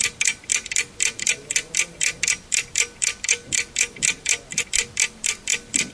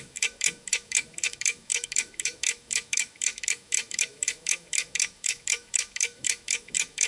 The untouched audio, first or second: first